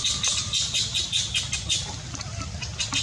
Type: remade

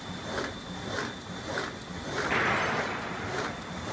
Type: recorded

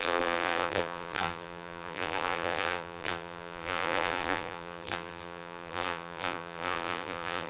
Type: remade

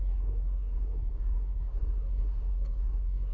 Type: remade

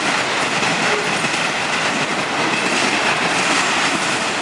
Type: recorded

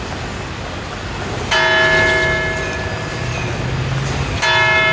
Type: recorded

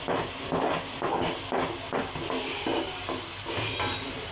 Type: recorded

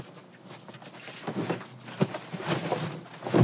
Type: recorded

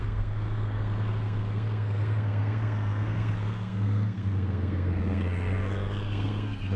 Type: remade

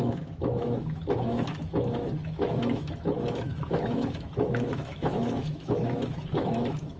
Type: remade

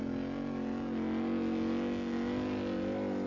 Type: recorded